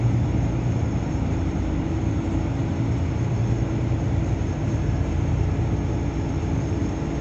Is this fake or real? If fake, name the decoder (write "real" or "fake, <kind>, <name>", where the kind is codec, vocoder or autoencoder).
fake, vocoder, BigVGAN v2